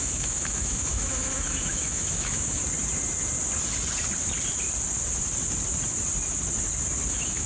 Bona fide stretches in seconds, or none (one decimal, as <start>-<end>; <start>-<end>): 2.6-7.1